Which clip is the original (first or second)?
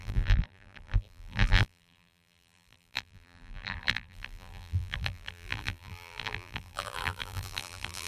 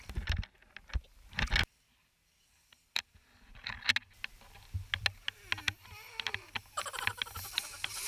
second